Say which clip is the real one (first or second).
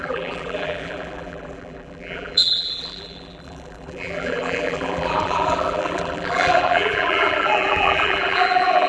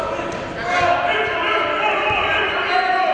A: second